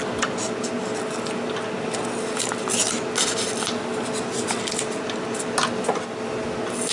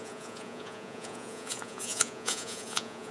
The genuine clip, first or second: first